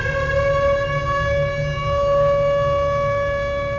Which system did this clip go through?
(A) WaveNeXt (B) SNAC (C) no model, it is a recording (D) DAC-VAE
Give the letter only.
C